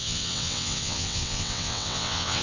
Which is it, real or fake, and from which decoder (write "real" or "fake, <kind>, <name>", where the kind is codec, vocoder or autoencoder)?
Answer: fake, vocoder, WaveNeXt